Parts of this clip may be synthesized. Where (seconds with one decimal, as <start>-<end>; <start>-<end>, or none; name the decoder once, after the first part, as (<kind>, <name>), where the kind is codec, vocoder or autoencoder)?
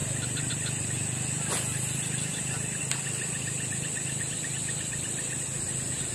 none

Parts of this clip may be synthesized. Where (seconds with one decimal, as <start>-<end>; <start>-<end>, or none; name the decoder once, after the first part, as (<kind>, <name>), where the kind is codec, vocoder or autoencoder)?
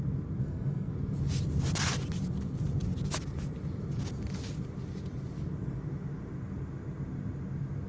0.4-0.9 (codec, SNAC)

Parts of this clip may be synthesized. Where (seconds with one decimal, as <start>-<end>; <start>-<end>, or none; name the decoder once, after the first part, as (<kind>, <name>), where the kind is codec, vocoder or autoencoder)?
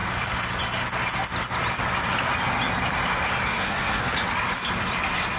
3.5-4.0 (codec, SNAC)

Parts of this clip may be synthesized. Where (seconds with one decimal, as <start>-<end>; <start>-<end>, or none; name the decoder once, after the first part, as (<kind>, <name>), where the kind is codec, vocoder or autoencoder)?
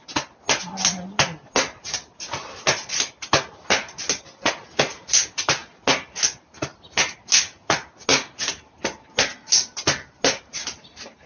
none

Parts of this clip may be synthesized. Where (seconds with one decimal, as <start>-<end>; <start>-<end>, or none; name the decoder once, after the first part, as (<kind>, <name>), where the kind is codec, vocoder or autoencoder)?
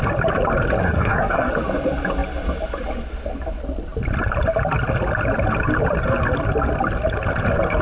0.8-1.5 (codec, SNAC)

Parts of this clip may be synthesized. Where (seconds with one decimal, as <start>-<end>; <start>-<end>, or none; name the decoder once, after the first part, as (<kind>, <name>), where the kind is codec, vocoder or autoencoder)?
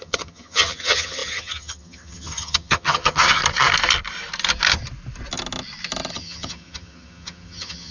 0.0-3.4 (vocoder, HiFi-GAN); 6.1-7.9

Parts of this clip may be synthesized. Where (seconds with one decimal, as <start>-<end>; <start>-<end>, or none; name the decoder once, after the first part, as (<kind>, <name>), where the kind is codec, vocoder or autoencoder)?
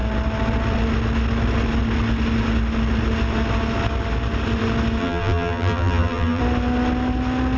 5.0-6.4 (vocoder, BigVGAN v2)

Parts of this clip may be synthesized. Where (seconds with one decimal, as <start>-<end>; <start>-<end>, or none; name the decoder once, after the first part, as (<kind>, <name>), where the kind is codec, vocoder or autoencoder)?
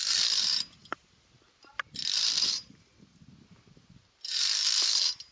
0.8-4.0 (vocoder, BigVGAN v2)